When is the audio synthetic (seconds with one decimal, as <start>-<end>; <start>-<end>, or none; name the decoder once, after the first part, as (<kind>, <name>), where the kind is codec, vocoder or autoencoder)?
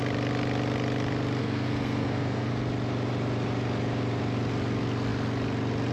1.4-2.5 (codec, SNAC)